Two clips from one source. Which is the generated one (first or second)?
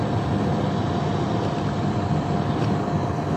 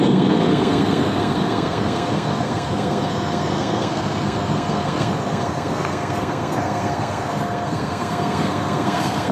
second